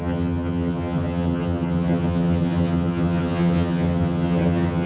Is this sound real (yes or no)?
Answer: no